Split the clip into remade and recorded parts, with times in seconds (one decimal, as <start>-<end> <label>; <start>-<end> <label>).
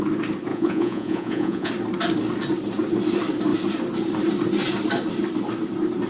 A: 0.0-0.5 recorded; 0.5-1.7 remade; 1.7-6.1 recorded